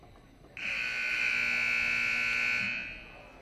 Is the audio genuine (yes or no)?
yes